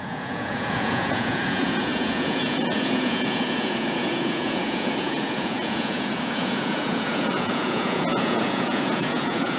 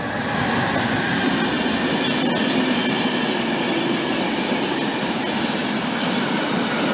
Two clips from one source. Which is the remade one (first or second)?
first